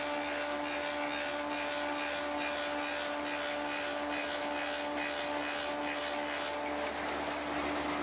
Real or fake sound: real